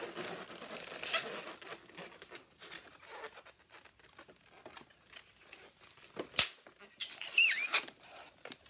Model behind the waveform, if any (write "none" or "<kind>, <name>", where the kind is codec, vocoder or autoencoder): none